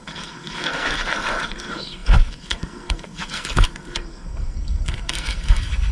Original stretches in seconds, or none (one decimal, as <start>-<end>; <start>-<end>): none